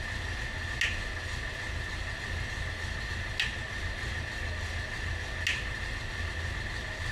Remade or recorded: recorded